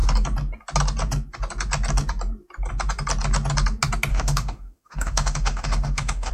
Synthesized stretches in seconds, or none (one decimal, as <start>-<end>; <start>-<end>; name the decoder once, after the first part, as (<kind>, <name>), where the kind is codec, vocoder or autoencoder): 4.1-6.3 (autoencoder, DAC-VAE)